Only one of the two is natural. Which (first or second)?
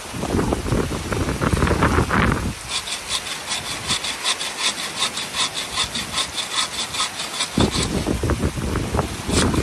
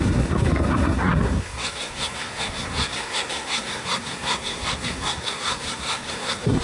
first